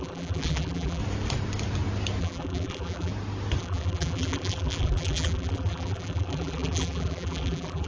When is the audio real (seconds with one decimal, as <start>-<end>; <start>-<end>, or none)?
1.0-2.2; 3.1-3.6